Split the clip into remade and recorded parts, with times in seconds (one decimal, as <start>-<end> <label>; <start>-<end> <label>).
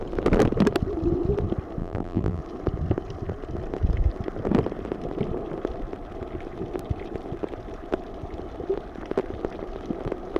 0.0-1.8 recorded; 1.8-2.4 remade; 2.4-10.4 recorded